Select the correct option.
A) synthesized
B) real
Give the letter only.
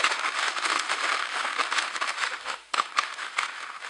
A